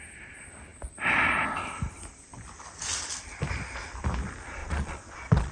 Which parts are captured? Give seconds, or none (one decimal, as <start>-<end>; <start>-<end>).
0.0-4.6